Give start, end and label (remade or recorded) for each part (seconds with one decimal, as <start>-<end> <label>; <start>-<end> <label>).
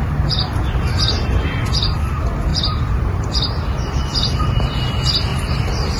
0.0-2.5 recorded; 2.5-3.6 remade; 3.6-5.3 recorded; 5.3-6.0 remade